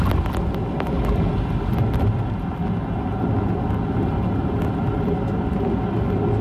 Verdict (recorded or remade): recorded